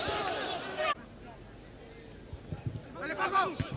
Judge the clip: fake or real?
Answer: real